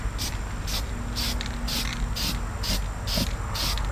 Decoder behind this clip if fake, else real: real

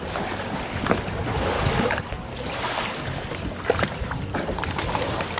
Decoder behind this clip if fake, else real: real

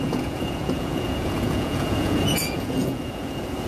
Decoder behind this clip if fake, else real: fake, vocoder, Vocos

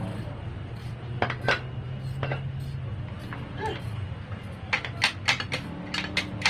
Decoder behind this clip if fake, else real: real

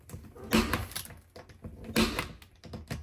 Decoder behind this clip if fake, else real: real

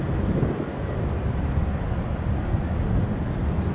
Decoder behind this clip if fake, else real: real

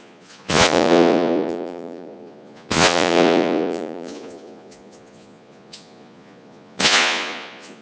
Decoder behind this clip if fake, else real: fake, vocoder, Vocos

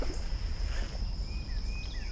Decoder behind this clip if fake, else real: real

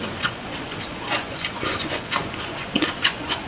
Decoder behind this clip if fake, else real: fake, vocoder, Vocos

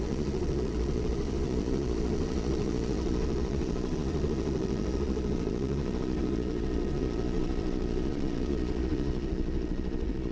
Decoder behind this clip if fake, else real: fake, vocoder, Vocos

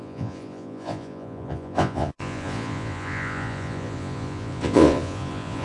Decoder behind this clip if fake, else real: fake, vocoder, Vocos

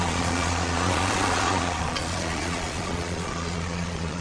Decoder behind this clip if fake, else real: fake, vocoder, Vocos